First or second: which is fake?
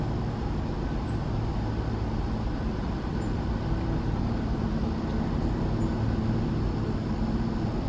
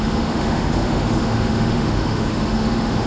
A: second